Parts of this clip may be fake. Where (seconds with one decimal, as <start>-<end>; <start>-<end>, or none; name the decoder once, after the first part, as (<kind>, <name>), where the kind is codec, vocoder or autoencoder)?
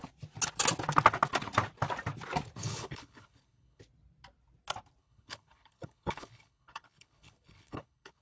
2.6-3.8 (codec, HILCodec); 5.0-8.2